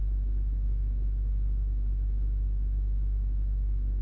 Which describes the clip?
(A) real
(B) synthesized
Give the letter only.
B